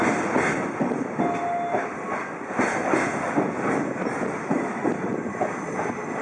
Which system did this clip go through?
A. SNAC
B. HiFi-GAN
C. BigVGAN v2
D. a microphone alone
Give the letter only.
D